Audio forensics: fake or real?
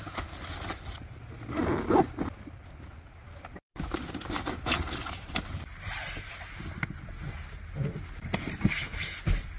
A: real